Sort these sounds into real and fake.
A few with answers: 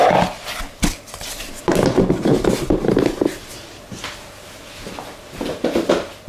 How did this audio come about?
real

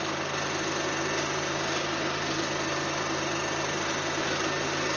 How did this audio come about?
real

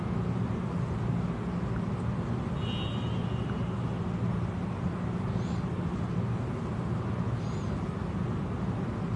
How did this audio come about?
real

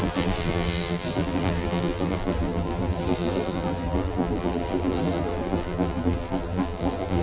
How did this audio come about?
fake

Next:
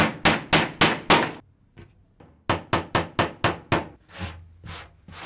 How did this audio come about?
real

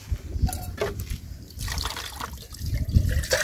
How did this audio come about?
real